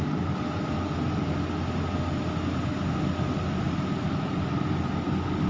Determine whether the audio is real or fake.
real